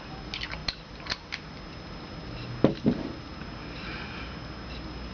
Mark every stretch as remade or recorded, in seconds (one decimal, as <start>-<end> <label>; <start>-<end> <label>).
0.0-5.1 recorded